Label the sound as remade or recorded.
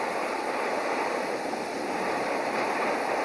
recorded